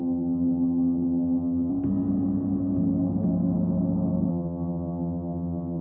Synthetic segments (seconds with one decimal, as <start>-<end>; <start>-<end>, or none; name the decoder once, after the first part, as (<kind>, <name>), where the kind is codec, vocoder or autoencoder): 0.0-1.7 (vocoder, HiFi-GAN); 4.3-5.8